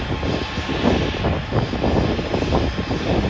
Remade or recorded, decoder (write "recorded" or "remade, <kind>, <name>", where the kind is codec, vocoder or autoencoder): recorded